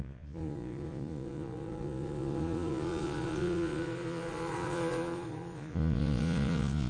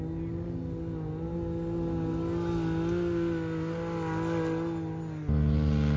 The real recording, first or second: second